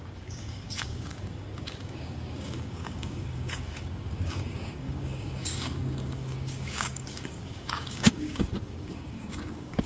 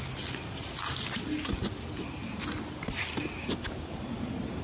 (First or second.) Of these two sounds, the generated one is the first